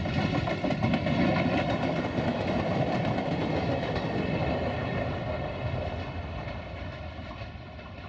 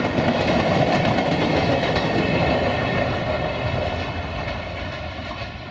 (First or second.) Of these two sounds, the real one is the second